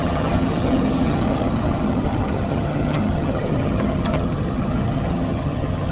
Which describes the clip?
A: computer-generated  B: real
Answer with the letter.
A